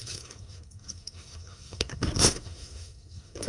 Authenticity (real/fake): fake